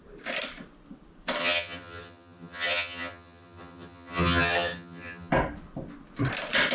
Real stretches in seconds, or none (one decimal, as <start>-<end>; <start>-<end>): 0.0-1.4; 5.3-6.7